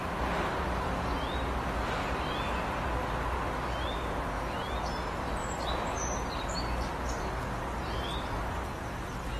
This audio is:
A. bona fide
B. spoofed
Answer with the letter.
A